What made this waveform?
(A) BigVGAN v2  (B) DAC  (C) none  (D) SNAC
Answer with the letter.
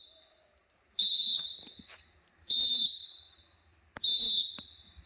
A